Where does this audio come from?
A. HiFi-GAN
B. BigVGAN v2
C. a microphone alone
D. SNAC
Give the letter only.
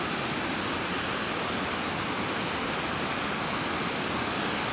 C